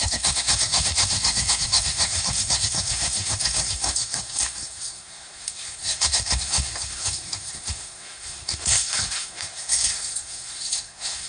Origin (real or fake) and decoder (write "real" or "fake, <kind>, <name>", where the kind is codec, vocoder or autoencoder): fake, codec, SNAC